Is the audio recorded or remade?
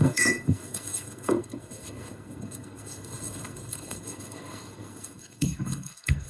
remade